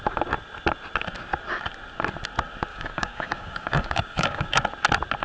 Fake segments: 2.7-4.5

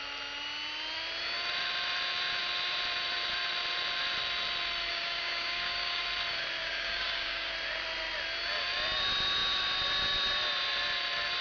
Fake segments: 4.9-6.0; 6.6-7.5

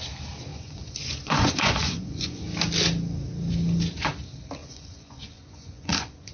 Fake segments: 0.5-2.4; 4.6-6.3

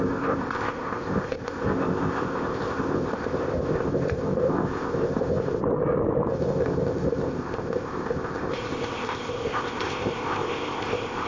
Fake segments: 0.0-5.6; 6.3-11.3